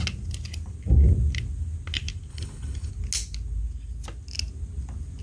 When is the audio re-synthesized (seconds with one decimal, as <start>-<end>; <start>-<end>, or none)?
2.3-2.9